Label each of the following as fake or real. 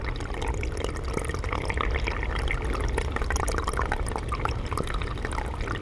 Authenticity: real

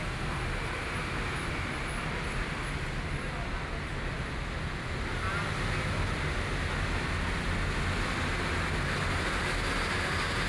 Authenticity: real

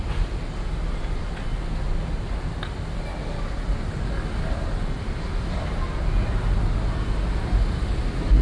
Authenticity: real